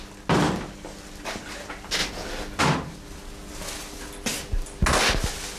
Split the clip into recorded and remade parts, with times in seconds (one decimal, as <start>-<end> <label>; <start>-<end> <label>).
0.0-5.6 recorded